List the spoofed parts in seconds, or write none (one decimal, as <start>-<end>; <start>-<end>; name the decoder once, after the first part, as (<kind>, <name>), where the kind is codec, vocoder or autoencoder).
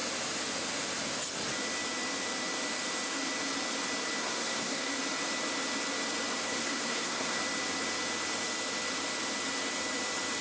4.2-5.0 (codec, SNAC); 6.3-7.4